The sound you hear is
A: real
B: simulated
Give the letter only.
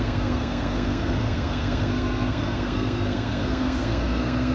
B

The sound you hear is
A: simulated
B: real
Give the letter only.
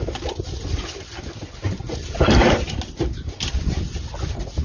B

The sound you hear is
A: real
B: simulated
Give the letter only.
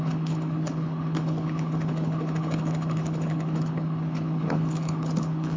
B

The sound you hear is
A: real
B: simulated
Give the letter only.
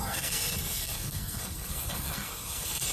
B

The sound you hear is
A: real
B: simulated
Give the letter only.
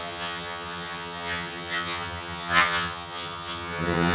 B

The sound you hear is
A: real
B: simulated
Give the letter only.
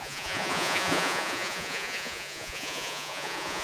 B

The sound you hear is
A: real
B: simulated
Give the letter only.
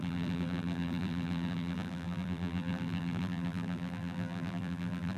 B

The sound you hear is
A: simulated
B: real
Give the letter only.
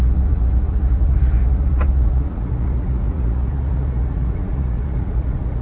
A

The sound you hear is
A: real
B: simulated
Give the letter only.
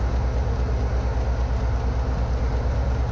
A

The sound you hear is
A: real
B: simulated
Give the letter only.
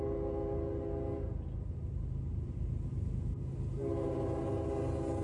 A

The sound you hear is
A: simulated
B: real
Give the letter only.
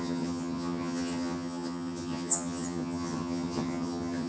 A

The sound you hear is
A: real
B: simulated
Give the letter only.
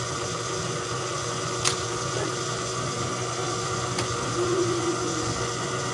B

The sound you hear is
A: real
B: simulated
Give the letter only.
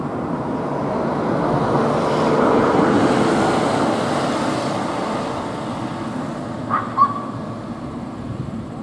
A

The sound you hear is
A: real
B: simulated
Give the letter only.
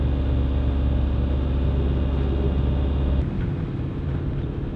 A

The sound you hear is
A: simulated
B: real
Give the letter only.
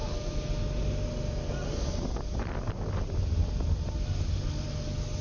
B